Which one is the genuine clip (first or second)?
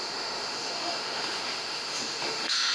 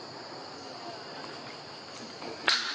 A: second